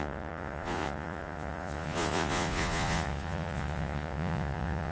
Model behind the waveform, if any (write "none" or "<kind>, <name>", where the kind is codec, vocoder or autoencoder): vocoder, Vocos